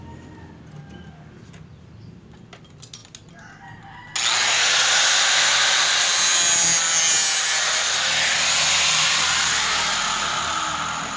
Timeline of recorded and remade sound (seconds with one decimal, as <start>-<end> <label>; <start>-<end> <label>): 0.0-11.2 recorded